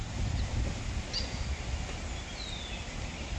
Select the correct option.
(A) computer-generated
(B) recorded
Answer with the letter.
B